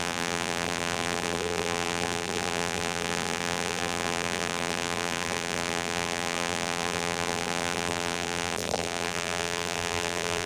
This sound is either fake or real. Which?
fake